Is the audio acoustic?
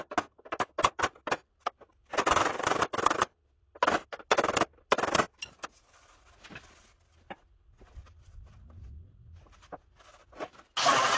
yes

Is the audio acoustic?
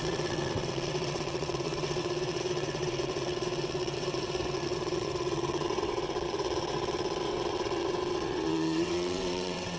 no